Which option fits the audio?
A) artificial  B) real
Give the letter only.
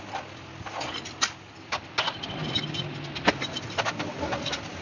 B